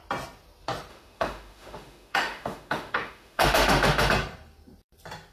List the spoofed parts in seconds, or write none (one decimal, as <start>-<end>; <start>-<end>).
0.9-4.1